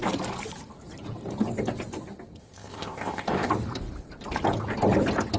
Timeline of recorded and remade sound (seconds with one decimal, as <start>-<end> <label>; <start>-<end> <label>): 0.0-2.4 recorded; 2.4-3.5 remade; 3.5-5.4 recorded